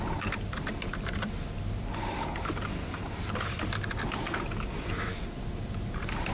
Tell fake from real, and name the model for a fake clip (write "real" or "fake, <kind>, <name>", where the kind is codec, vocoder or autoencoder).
real